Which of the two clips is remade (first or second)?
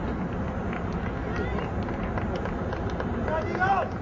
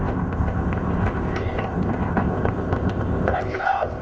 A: second